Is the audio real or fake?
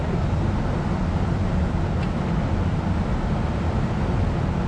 real